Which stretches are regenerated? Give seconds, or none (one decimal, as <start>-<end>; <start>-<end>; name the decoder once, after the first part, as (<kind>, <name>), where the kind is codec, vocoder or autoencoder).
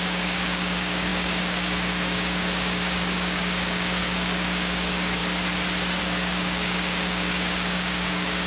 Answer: 0.0-5.2 (codec, DAC); 6.0-8.5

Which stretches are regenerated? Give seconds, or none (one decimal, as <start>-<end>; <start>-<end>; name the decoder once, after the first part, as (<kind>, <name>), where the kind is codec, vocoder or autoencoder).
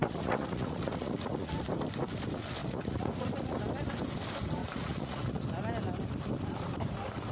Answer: 0.0-1.5 (vocoder, Vocos); 2.6-3.6; 4.6-5.4